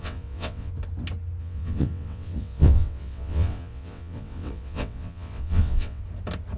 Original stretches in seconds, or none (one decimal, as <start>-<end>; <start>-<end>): 0.7-1.4; 6.0-6.6